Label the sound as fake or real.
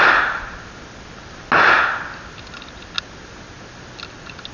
real